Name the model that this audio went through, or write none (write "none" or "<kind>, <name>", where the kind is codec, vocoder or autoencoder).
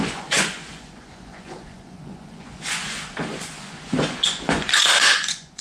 vocoder, Vocos